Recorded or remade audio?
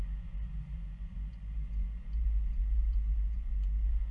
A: remade